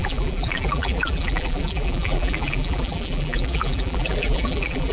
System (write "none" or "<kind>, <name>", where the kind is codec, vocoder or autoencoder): vocoder, BigVGAN v2